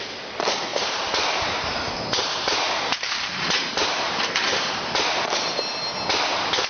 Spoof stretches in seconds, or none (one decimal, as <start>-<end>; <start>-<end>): 0.7-4.7

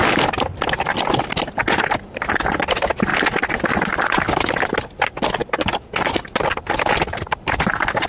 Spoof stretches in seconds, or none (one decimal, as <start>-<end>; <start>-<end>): none

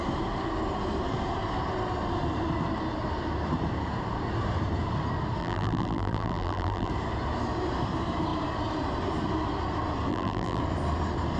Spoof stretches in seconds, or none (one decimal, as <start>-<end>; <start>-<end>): 5.4-6.9; 10.1-10.6

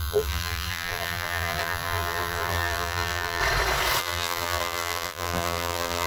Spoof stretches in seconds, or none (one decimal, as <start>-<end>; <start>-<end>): 0.0-3.4; 4.0-6.1

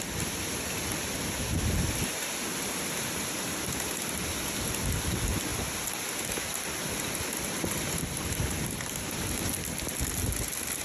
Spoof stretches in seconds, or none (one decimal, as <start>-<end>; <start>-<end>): none